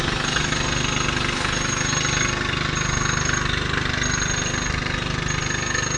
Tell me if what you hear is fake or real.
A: real